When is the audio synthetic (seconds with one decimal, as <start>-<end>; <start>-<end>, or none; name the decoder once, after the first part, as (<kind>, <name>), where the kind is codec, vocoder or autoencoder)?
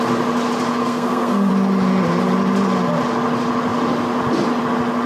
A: 0.8-1.5 (codec, SNAC)